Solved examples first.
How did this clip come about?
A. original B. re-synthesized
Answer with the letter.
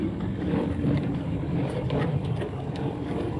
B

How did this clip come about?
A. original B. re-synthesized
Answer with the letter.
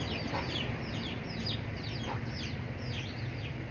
A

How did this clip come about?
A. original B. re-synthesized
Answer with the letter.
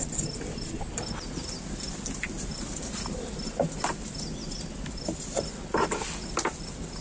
A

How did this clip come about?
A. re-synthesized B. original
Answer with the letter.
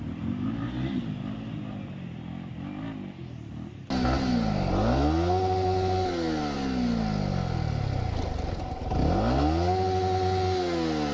B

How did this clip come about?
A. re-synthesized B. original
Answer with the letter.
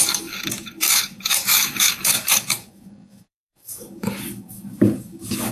A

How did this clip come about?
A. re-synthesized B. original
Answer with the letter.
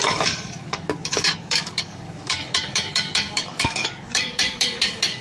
A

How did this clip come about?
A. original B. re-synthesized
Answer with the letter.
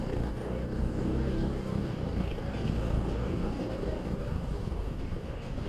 B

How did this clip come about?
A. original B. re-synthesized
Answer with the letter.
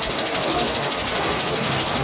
B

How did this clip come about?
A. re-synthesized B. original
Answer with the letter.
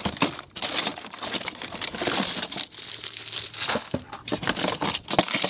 B